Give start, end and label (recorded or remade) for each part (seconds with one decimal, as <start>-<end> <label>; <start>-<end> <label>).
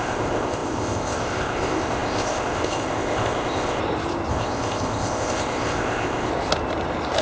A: 0.0-3.8 remade; 3.8-4.3 recorded; 4.3-6.3 remade; 6.3-7.2 recorded